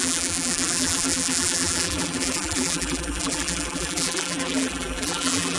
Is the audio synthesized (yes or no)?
yes